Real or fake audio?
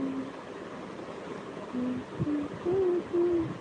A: real